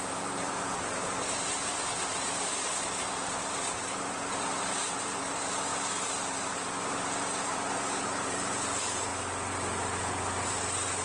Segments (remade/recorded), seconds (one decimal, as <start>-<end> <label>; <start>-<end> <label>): 0.0-4.5 remade; 4.5-5.0 recorded; 5.0-9.1 remade; 9.1-10.5 recorded; 10.5-11.0 remade